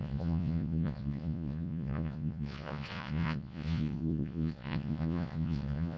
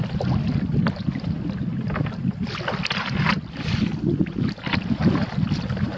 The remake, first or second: first